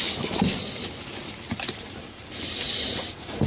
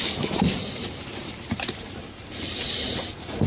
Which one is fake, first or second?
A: second